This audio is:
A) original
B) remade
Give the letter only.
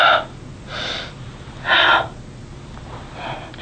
A